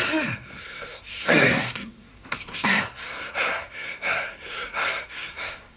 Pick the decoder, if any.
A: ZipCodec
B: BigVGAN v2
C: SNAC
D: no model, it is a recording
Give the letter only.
C